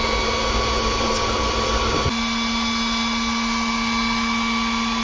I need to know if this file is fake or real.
real